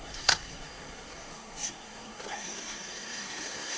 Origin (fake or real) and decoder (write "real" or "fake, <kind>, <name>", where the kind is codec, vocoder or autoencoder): fake, codec, SNAC